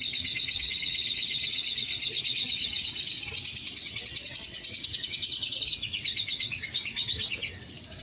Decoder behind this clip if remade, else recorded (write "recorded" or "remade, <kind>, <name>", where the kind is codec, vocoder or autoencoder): remade, vocoder, WaveNeXt